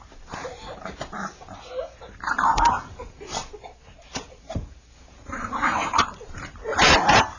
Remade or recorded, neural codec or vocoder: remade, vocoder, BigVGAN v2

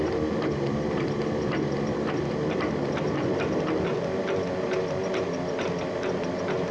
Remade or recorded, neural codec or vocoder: recorded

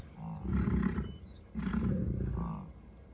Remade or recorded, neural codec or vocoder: recorded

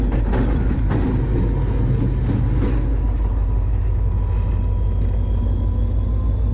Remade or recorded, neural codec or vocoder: recorded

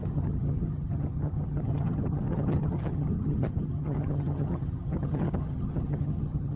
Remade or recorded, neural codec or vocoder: remade, vocoder, HiFi-GAN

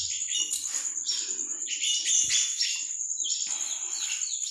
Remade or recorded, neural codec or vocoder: recorded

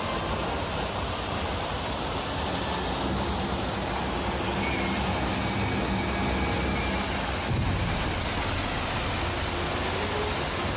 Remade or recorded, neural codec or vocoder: recorded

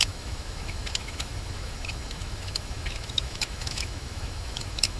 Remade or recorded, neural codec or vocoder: remade, autoencoder, DAC-VAE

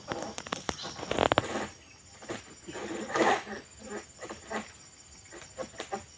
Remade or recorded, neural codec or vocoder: recorded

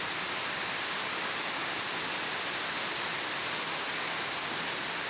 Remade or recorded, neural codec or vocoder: recorded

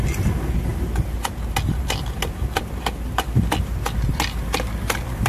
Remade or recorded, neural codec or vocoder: recorded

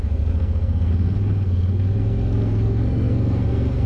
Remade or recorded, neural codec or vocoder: remade, codec, SNAC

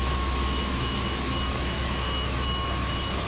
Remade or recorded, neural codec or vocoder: remade, autoencoder, DAC-VAE